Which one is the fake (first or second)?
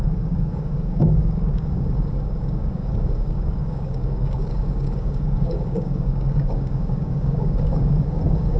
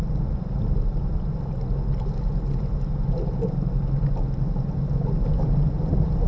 first